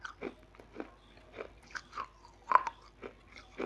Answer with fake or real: real